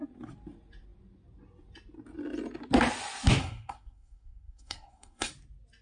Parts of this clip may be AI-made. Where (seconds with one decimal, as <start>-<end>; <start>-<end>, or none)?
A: 3.4-5.3